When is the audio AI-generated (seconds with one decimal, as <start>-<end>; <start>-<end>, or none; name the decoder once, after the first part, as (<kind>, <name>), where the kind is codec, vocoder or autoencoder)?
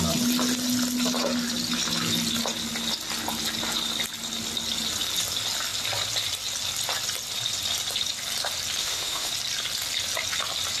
8.8-9.3 (autoencoder, DAC-VAE)